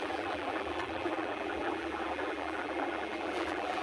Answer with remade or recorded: remade